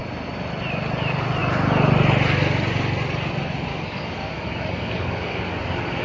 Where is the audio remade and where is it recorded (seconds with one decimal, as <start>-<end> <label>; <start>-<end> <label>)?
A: 0.0-3.7 recorded; 3.7-6.0 remade

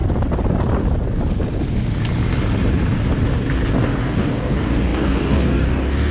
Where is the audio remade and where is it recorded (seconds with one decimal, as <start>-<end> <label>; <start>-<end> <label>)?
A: 0.0-3.7 recorded; 3.7-6.1 remade

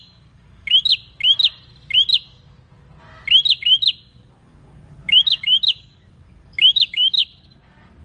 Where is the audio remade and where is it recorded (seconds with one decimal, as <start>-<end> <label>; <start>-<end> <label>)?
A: 0.0-0.9 remade; 0.9-4.0 recorded; 4.0-7.2 remade; 7.2-8.0 recorded

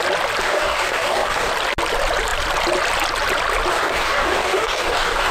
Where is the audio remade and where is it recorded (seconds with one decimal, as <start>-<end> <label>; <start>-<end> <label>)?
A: 0.0-0.4 recorded; 0.4-1.5 remade; 1.5-3.7 recorded; 3.7-5.3 remade

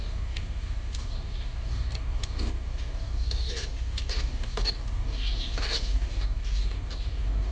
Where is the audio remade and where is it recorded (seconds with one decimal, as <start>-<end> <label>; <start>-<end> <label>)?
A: 0.0-7.5 remade

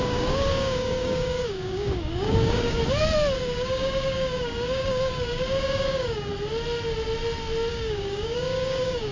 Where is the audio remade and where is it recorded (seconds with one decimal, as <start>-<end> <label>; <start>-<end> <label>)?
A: 0.0-2.8 remade; 2.8-3.4 recorded; 3.4-6.3 remade; 6.3-7.7 recorded; 7.7-9.1 remade

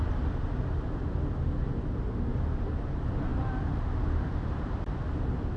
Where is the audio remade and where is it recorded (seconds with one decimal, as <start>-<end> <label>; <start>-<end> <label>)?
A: 0.0-5.6 recorded

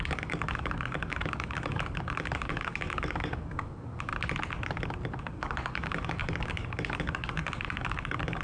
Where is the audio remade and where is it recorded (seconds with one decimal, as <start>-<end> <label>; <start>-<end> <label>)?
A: 0.0-4.1 remade; 4.1-5.2 recorded; 5.2-8.4 remade